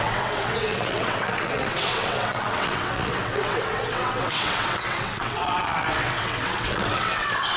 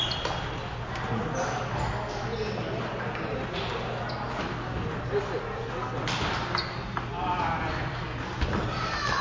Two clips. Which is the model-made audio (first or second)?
first